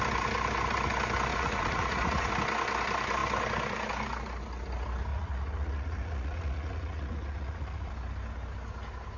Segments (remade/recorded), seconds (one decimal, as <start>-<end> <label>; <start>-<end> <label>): 0.0-1.3 recorded; 1.3-2.3 remade; 2.3-5.1 recorded; 5.1-7.9 remade; 7.9-9.2 recorded